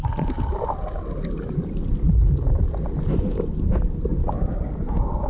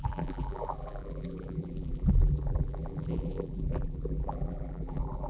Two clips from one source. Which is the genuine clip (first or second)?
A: first